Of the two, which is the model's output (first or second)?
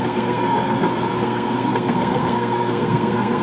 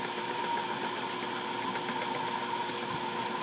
first